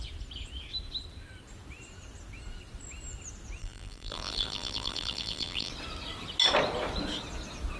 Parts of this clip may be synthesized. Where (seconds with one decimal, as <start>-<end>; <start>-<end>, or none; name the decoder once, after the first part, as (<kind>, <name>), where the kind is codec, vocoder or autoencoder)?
3.6-5.7 (vocoder, BigVGAN v2)